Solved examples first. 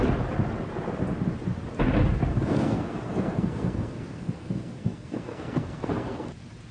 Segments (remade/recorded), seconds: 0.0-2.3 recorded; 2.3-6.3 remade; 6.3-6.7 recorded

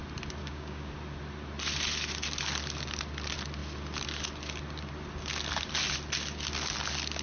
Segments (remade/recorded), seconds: 0.0-0.4 recorded; 0.4-0.9 remade; 0.9-7.2 recorded

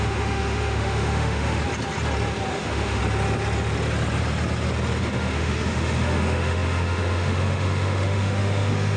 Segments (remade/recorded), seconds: 0.0-1.6 remade; 1.6-2.5 recorded; 2.5-3.0 remade; 3.0-5.0 recorded; 5.0-9.0 remade